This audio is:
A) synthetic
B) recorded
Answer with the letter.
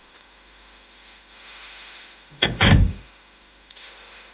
A